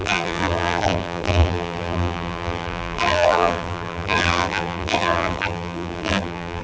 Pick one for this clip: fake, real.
fake